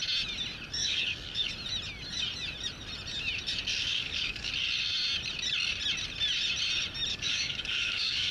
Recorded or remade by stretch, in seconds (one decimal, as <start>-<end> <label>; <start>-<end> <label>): 0.0-0.8 recorded; 0.8-1.5 remade; 1.5-3.8 recorded; 3.8-4.5 remade; 4.5-7.1 recorded; 7.1-8.3 remade